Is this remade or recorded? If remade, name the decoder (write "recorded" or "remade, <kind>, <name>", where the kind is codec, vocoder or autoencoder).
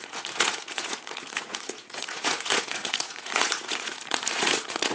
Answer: remade, vocoder, Vocos